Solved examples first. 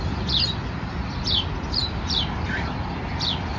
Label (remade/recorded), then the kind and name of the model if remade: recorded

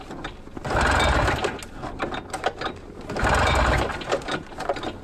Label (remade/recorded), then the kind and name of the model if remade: recorded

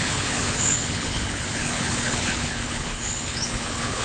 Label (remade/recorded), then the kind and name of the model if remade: remade, codec, HILCodec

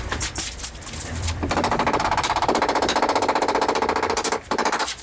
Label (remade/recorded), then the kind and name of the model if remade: remade, vocoder, BigVGAN v2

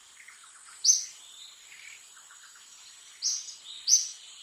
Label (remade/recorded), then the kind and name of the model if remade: recorded